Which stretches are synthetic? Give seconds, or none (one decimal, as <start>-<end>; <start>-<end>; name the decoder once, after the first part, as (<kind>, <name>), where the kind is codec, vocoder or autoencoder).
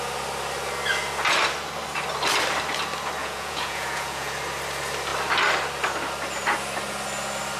3.2-4.3 (vocoder, Vocos)